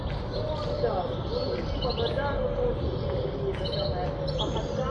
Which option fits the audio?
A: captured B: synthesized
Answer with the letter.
A